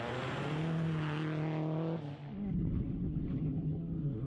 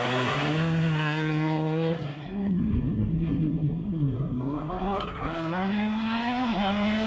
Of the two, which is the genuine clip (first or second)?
first